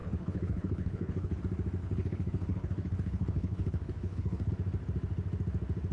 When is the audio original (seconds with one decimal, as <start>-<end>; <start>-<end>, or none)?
1.4-1.8; 4.5-5.9